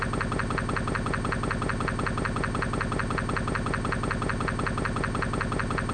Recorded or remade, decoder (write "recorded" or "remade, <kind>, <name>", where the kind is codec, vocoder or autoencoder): recorded